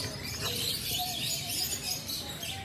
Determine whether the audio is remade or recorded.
recorded